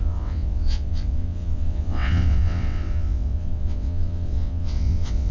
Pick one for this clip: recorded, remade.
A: remade